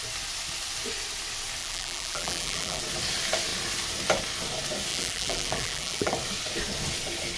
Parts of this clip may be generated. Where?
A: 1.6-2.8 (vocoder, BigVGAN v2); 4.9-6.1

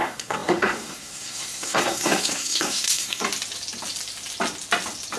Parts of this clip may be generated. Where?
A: 0.0-3.2 (codec, SNAC)

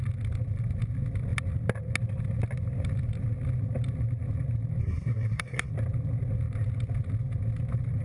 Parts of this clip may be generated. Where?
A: 4.8-5.7 (codec, SNAC)

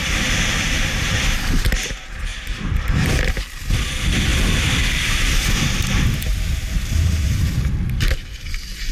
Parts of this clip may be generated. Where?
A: 0.0-1.2 (vocoder, BigVGAN v2); 2.3-3.5; 4.3-6.7

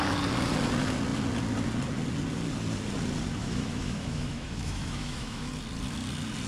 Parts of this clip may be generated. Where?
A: 3.4-5.5 (autoencoder, DAC-VAE)

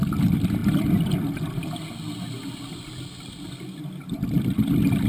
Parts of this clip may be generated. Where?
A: none

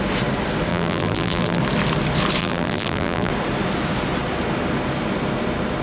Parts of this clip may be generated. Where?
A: 0.7-1.6 (vocoder, BigVGAN v2); 2.4-3.3

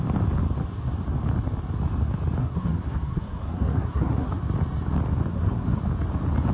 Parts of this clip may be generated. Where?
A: 2.4-4.4 (codec, SNAC); 5.3-5.8